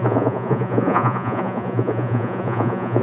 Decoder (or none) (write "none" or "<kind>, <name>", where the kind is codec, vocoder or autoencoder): vocoder, Vocos